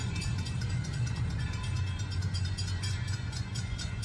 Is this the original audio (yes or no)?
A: no